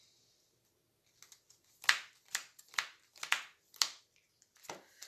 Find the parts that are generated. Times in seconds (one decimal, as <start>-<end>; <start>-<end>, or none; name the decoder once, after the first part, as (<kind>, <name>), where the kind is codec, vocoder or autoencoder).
none